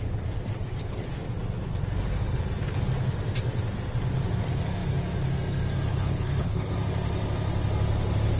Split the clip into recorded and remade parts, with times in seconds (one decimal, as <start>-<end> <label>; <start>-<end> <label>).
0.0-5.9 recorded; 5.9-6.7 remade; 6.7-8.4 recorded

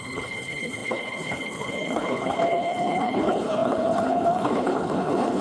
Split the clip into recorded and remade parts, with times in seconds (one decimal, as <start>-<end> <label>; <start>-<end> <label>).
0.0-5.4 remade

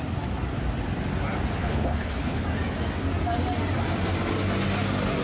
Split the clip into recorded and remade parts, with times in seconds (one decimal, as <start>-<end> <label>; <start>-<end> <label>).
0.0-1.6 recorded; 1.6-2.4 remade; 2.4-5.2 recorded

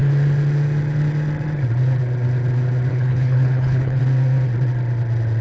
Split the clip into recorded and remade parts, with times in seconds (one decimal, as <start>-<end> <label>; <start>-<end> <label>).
0.0-2.9 recorded; 2.9-4.0 remade; 4.0-5.4 recorded

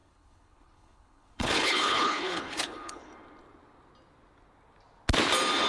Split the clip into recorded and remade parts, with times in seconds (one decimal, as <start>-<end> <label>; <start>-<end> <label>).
0.0-3.1 remade; 3.1-5.7 recorded

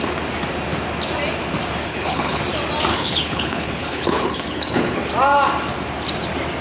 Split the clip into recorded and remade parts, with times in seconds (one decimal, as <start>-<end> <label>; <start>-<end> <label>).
0.0-1.9 recorded; 1.9-2.4 remade; 2.4-2.9 recorded; 2.9-5.1 remade; 5.1-6.6 recorded

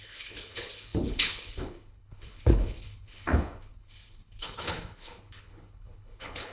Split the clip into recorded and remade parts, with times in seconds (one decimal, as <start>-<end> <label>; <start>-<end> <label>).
0.0-6.5 remade